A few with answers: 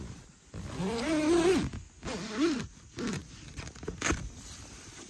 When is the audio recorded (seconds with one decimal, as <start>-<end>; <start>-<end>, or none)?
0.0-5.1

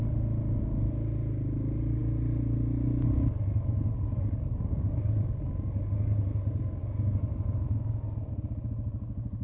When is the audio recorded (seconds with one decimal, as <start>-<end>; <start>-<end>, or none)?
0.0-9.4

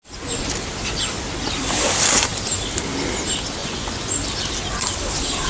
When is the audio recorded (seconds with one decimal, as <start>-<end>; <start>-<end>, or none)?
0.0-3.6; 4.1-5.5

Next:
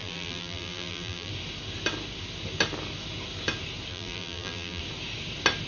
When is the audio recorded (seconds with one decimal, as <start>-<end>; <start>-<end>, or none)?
1.3-3.9; 4.8-5.7